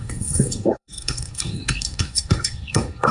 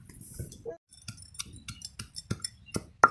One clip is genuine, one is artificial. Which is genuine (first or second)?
second